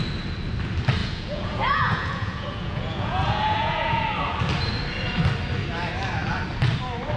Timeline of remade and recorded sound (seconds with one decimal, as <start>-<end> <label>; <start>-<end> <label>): 0.0-1.0 recorded; 1.0-4.0 remade; 4.0-7.2 recorded